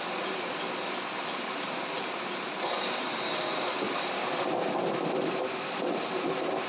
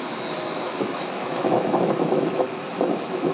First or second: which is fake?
second